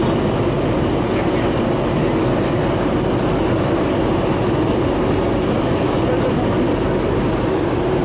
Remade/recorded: recorded